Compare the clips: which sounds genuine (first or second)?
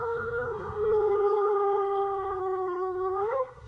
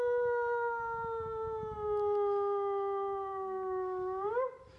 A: second